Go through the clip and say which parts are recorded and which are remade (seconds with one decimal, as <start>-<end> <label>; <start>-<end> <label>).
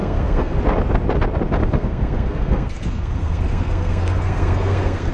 0.0-0.6 remade; 0.6-1.6 recorded; 1.6-5.1 remade